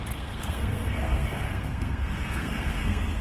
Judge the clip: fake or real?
fake